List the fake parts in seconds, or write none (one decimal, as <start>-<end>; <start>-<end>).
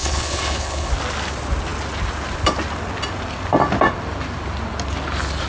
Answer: 0.0-0.9